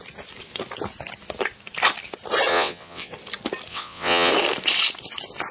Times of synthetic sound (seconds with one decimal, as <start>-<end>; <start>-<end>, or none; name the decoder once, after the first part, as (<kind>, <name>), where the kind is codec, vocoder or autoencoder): 2.5-3.1 (vocoder, WaveNeXt); 3.7-4.3